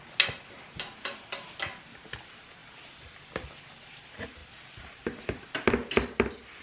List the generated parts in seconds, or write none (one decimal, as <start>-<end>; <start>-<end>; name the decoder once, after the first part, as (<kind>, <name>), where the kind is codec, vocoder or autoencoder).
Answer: none